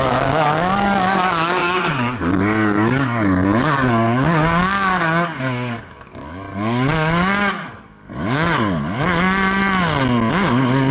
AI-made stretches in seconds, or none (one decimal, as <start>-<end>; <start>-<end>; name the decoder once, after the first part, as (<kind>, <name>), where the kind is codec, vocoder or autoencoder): 0.0-9.6 (codec, DAC); 10.3-10.9